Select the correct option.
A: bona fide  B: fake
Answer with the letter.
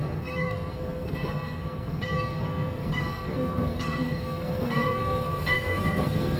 B